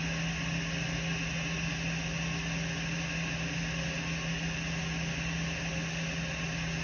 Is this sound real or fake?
real